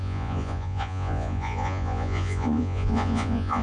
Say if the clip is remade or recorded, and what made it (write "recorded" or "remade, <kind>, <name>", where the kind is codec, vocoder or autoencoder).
remade, vocoder, Vocos